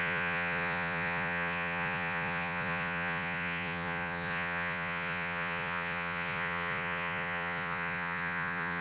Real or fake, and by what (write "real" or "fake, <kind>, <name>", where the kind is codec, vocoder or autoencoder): fake, vocoder, Vocos